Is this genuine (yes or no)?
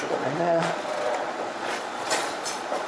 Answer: no